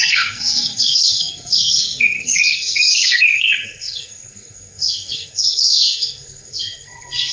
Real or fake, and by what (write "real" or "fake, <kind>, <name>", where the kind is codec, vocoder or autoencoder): fake, codec, SNAC